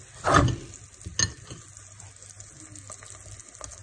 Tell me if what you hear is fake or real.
real